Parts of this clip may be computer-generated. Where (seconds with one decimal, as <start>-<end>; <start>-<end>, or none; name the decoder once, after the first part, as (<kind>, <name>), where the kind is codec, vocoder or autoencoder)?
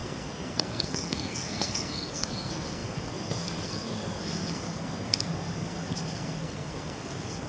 0.0-7.5 (codec, SNAC)